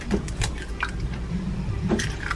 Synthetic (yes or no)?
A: yes